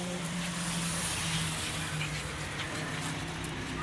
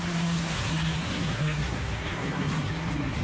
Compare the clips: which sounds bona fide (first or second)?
first